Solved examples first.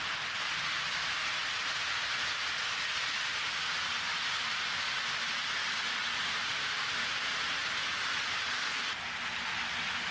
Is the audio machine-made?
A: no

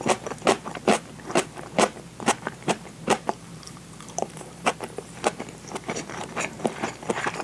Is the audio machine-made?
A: yes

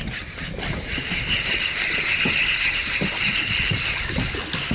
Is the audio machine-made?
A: no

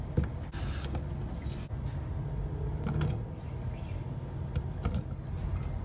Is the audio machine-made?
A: no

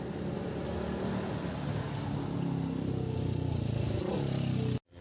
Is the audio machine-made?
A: no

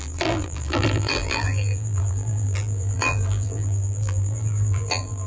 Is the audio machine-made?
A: yes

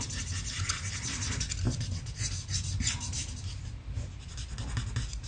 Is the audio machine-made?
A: no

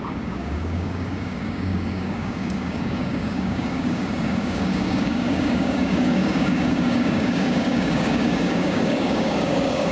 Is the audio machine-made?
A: yes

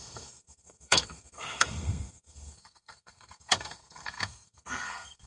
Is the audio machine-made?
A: yes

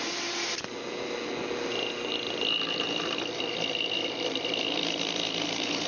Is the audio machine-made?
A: no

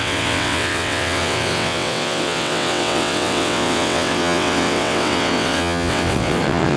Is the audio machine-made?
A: yes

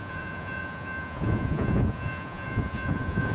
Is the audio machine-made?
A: yes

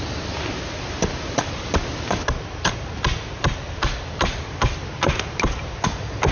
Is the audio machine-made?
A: no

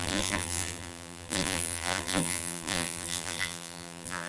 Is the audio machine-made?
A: yes